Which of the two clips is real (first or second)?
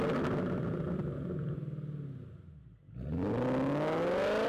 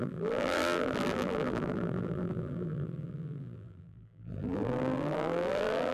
first